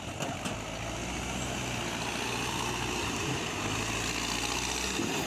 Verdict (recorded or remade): recorded